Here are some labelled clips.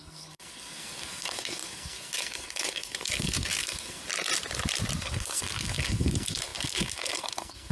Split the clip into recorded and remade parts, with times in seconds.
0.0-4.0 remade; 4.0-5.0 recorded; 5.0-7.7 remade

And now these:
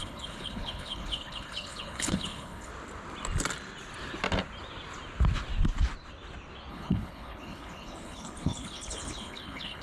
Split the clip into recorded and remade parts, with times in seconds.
0.0-2.7 remade; 2.7-6.7 recorded; 6.7-9.8 remade

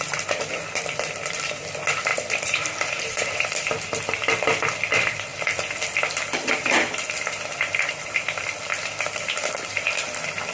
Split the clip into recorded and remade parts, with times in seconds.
0.0-2.1 remade; 2.1-3.0 recorded; 3.0-10.5 remade